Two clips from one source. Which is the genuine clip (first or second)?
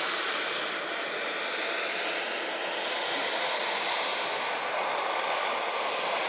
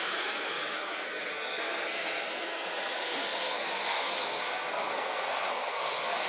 first